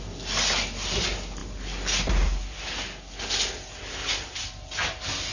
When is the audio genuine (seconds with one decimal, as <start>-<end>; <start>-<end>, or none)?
0.0-5.3